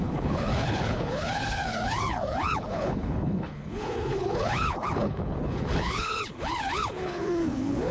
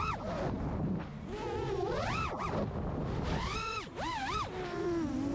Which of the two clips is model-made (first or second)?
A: first